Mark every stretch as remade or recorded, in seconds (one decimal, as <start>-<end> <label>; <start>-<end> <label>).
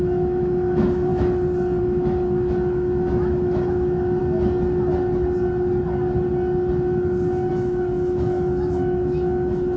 0.0-1.1 remade; 1.1-1.8 recorded; 1.8-4.2 remade; 4.2-7.5 recorded; 7.5-9.8 remade